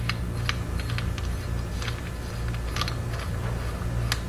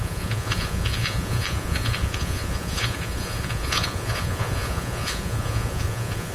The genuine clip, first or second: first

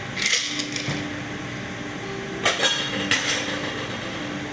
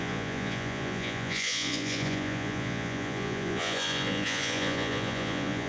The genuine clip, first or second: first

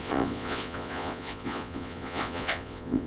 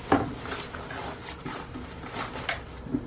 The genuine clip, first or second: second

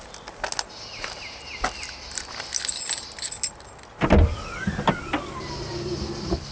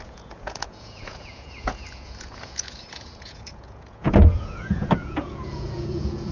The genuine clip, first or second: first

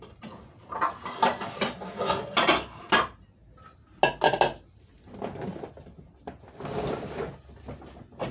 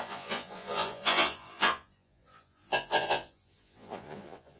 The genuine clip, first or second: first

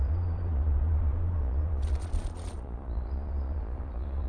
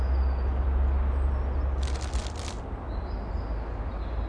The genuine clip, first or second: second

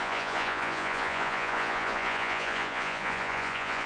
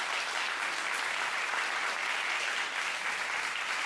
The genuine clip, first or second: second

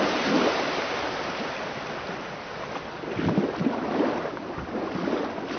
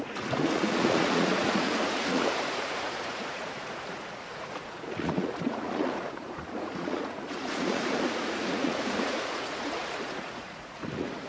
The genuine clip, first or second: first